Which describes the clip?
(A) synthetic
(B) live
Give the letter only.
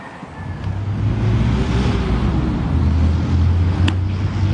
B